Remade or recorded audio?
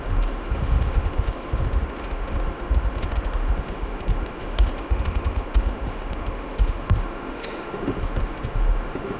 remade